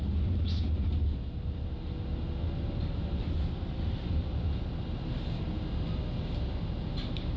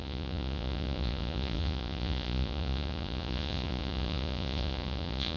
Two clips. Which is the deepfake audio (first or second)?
second